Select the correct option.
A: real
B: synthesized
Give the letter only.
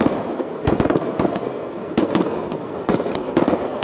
B